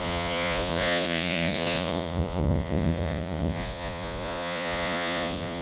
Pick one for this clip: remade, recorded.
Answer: remade